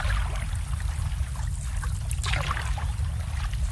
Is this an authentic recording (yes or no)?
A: yes